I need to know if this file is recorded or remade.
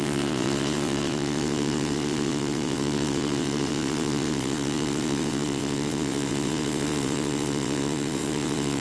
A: remade